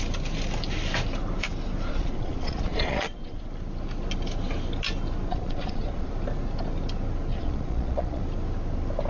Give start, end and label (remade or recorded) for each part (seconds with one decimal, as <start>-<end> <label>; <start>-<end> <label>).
0.0-1.9 recorded; 1.9-3.4 remade; 3.4-5.3 recorded; 5.3-6.1 remade; 6.1-7.3 recorded; 7.3-8.2 remade; 8.2-9.1 recorded